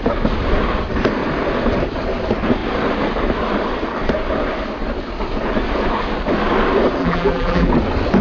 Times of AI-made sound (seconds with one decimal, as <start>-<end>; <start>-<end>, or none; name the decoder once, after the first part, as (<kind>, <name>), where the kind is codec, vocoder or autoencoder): 7.0-7.7 (vocoder, BigVGAN v2)

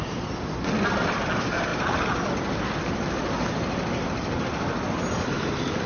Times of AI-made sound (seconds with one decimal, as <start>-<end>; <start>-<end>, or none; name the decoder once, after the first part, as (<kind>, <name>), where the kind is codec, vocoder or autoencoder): none

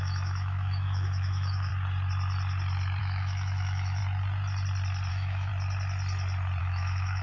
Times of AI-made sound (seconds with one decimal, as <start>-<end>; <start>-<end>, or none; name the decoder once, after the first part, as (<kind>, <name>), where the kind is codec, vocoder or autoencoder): 0.0-1.7 (autoencoder, DAC-VAE); 3.0-4.0; 5.1-5.5; 6.6-7.2

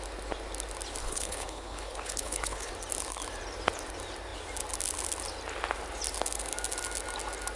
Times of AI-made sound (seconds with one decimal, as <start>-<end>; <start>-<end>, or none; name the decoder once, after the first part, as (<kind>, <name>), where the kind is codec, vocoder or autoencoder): 1.0-2.7 (codec, HILCodec)